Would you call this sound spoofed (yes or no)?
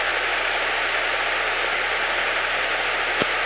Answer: no